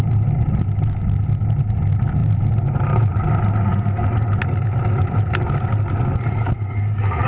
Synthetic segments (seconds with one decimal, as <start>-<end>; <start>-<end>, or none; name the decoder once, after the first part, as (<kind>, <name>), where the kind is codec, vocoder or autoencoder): 0.0-0.6 (vocoder, BigVGAN v2); 2.2-3.1